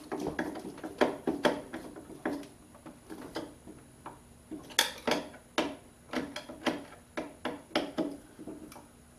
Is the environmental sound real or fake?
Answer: real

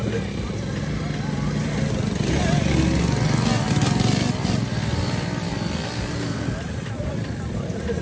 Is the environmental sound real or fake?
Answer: real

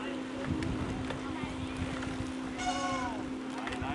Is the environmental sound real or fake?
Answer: real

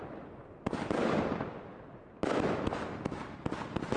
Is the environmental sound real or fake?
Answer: real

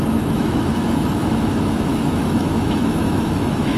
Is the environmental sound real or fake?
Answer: fake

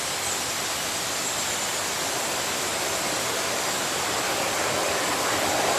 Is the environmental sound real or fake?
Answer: real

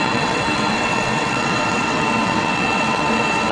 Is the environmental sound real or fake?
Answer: fake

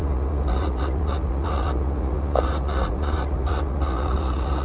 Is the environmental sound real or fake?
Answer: fake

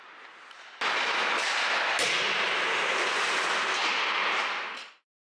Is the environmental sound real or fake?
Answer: real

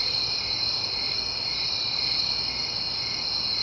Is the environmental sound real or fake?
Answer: real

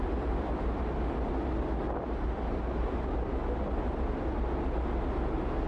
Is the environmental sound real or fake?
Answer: real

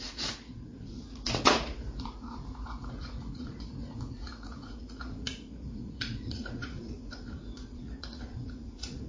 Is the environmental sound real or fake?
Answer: fake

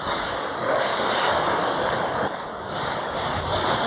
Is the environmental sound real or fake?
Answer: fake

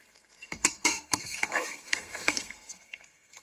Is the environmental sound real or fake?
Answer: fake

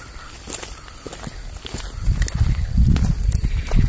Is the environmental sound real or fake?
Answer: real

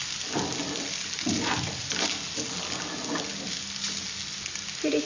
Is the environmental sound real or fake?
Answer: real